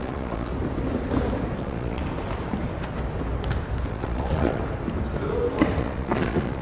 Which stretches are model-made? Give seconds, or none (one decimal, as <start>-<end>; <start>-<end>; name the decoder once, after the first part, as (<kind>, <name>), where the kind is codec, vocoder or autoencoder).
0.0-0.5 (vocoder, Vocos); 1.6-2.0; 3.9-4.6; 5.8-6.6